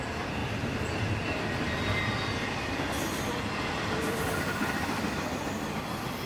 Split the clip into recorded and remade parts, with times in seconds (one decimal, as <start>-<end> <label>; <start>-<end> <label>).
0.0-0.4 remade; 0.4-3.6 recorded; 3.6-6.3 remade